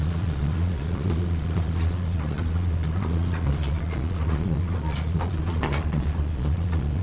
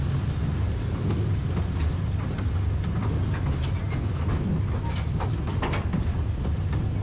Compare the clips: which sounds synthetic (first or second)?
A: first